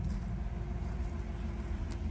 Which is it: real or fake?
real